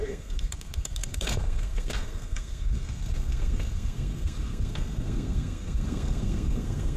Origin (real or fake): fake